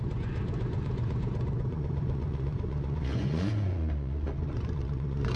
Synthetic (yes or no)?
yes